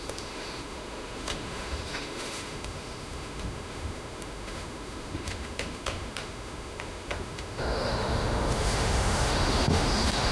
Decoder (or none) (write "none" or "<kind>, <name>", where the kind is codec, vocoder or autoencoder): autoencoder, DAC-VAE